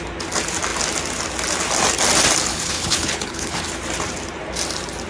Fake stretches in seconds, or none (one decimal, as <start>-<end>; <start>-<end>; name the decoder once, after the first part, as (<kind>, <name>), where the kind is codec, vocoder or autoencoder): 2.5-3.6 (codec, HILCodec)